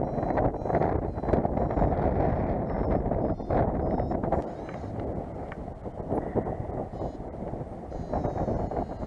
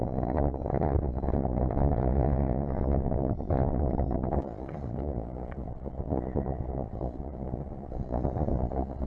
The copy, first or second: second